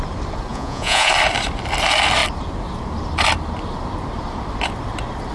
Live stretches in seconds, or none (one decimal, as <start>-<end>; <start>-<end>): 0.0-0.5; 1.1-5.3